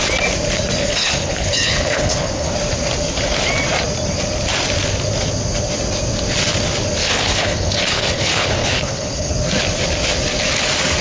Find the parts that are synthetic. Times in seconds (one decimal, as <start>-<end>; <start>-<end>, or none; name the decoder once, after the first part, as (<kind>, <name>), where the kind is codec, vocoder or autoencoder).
0.8-2.5 (codec, HILCodec); 7.0-9.3